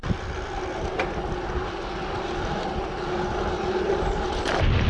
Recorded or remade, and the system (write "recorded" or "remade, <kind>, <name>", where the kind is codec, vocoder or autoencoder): recorded